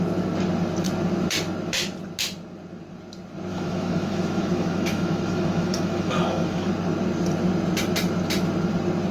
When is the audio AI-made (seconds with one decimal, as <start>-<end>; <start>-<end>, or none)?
3.5-6.7